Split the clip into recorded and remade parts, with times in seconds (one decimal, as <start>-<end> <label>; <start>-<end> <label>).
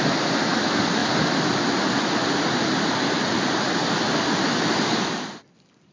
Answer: 0.0-1.0 remade; 1.0-4.5 recorded; 4.5-5.9 remade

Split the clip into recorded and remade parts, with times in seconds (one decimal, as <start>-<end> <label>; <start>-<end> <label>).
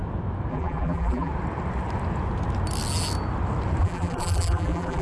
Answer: 0.0-0.5 recorded; 0.5-1.3 remade; 1.3-3.8 recorded; 3.8-5.0 remade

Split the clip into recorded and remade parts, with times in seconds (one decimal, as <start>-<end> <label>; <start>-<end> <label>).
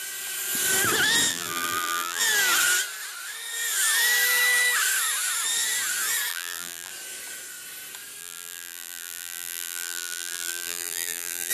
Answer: 0.0-1.3 recorded; 1.3-2.2 remade; 2.2-6.3 recorded; 6.3-6.9 remade; 6.9-8.2 recorded; 8.2-11.5 remade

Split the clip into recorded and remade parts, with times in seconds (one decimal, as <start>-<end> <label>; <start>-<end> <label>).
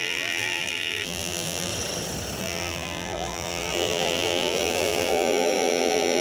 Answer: 0.0-1.7 remade; 1.7-2.4 recorded; 2.4-6.2 remade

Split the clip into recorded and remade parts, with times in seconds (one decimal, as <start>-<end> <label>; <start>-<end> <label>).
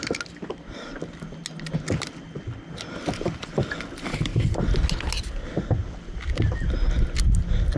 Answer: 0.0-7.8 recorded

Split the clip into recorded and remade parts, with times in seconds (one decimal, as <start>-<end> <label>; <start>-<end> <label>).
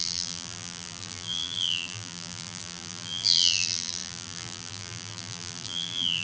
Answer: 0.0-6.2 remade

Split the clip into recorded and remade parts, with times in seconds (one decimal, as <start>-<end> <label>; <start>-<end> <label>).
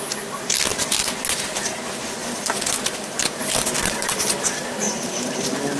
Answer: 0.0-2.2 recorded; 2.2-5.8 remade